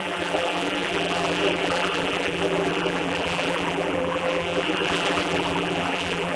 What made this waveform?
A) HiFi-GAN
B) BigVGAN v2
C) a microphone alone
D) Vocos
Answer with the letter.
B